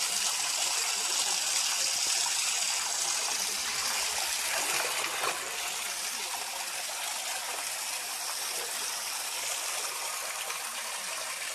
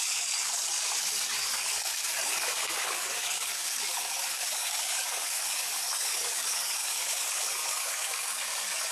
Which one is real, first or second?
first